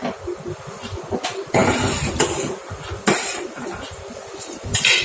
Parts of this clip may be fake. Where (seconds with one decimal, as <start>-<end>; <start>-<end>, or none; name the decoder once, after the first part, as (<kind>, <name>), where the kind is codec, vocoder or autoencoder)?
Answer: none